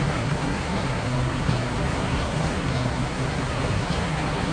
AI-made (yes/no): yes